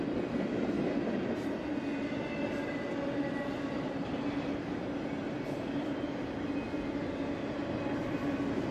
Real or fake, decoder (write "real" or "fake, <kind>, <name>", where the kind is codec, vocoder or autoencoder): real